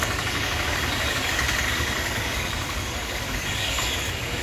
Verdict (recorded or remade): remade